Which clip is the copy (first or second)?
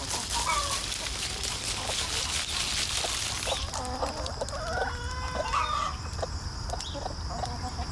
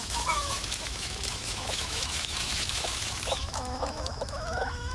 second